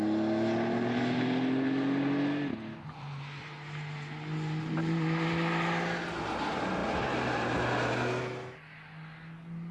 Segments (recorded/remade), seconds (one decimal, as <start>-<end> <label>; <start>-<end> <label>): 0.0-9.7 recorded